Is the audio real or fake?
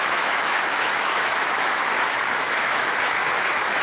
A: fake